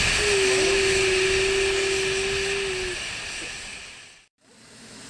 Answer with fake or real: real